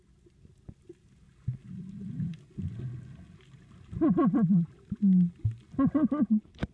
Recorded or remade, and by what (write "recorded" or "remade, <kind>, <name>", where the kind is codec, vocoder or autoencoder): recorded